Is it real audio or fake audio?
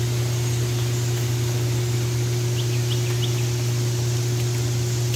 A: real